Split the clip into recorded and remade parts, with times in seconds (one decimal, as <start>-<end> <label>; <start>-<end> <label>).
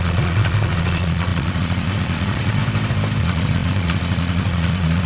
0.0-2.6 remade; 2.6-3.2 recorded; 3.2-5.1 remade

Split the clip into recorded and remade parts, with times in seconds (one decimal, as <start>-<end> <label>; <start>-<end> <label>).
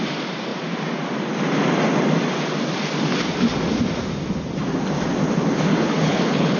0.0-5.7 recorded; 5.7-6.6 remade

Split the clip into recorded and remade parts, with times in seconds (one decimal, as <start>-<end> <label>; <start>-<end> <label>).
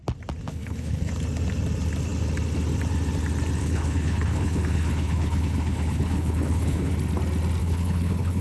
0.0-0.5 recorded; 0.5-1.1 remade; 1.1-3.6 recorded; 3.6-6.9 remade; 6.9-7.6 recorded; 7.6-8.4 remade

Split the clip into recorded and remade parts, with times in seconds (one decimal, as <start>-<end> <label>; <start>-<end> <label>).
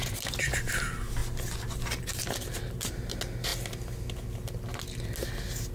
0.0-1.2 recorded; 1.2-2.3 remade; 2.3-5.7 recorded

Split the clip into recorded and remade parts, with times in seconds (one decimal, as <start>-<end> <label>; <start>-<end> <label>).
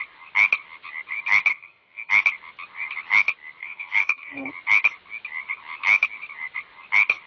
0.0-1.5 recorded; 1.5-2.1 remade; 2.1-3.6 recorded; 3.6-4.5 remade; 4.5-7.3 recorded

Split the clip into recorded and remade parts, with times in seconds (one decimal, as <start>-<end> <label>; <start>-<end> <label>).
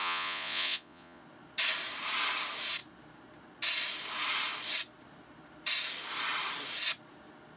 0.0-1.2 remade; 1.2-7.6 recorded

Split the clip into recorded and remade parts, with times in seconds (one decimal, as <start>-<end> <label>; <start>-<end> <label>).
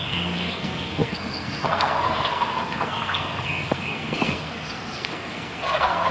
0.0-6.1 remade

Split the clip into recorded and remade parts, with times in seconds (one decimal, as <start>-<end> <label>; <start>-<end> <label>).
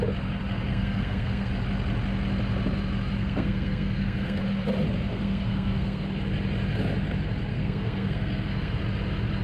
0.0-0.7 recorded; 0.7-1.5 remade; 1.5-3.2 recorded; 3.2-4.4 remade; 4.4-5.1 recorded; 5.1-6.0 remade; 6.0-7.5 recorded; 7.5-8.8 remade; 8.8-9.4 recorded